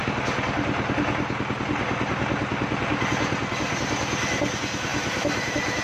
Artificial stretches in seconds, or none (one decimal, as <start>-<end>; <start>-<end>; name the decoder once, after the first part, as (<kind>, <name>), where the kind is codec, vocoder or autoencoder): none